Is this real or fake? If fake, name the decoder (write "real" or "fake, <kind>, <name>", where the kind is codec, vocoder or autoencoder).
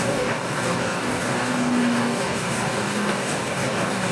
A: fake, codec, DAC